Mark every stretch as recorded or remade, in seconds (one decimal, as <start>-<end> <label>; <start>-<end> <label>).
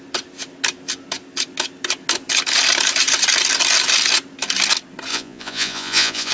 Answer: 0.0-5.1 recorded; 5.1-6.3 remade